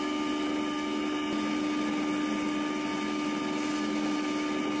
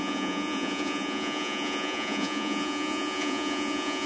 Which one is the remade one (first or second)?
second